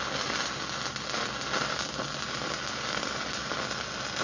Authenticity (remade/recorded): recorded